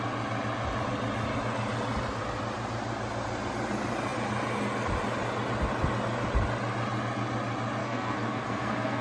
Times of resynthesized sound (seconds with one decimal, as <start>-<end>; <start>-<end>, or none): 7.8-9.0